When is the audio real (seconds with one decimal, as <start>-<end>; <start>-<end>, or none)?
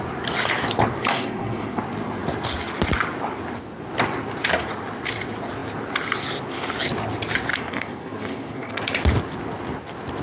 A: 0.0-1.1; 1.8-7.5; 8.8-10.2